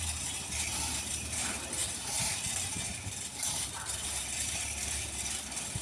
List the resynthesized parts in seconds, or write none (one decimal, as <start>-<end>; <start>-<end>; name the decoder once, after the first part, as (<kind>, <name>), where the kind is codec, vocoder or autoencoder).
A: 0.0-5.8 (vocoder, BigVGAN v2)